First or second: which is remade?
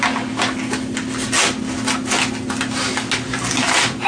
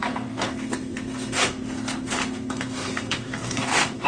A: second